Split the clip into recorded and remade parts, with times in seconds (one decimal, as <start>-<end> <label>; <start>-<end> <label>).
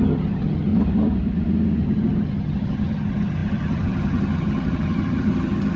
0.0-0.7 remade; 0.7-1.8 recorded; 1.8-5.8 remade